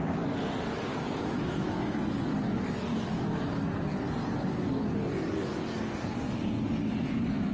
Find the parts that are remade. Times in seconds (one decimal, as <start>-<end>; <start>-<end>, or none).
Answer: 0.9-2.0; 2.9-3.4